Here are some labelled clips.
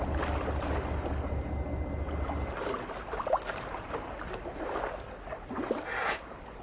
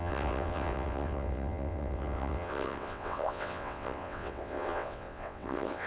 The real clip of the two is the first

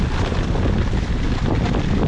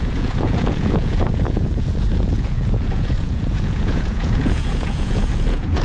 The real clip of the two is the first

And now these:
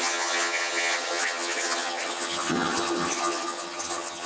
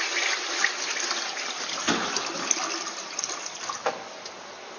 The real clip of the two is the second